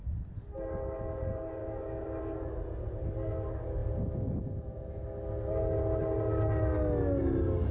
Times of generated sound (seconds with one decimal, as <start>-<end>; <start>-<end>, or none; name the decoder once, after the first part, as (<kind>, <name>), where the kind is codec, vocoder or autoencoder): 1.6-2.2 (codec, DAC)